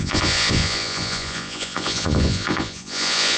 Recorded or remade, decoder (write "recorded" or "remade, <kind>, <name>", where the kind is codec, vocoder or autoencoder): remade, vocoder, Vocos